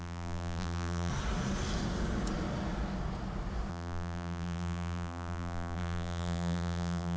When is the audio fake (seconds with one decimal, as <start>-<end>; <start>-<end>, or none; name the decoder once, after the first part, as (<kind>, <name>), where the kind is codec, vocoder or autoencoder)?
0.0-1.1 (vocoder, BigVGAN v2); 3.7-7.2